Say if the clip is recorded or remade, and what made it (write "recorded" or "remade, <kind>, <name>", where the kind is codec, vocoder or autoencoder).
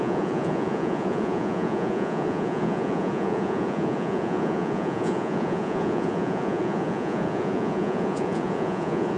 remade, vocoder, Vocos